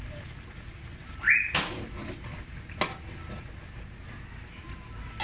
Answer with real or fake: real